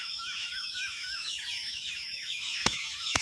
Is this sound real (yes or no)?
no